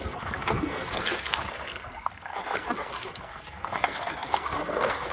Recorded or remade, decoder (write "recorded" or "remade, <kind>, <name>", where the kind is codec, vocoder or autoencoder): remade, codec, SNAC